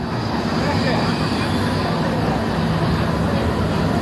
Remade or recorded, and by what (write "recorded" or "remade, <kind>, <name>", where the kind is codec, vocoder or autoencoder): recorded